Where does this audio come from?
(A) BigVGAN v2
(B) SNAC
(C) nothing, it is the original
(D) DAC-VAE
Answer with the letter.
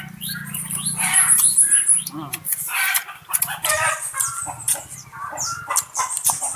A